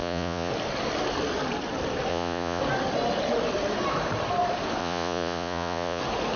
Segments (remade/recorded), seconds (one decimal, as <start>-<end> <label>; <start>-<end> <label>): 0.0-0.5 remade; 0.5-2.1 recorded; 2.1-2.6 remade; 2.6-4.8 recorded; 4.8-6.0 remade; 6.0-6.4 recorded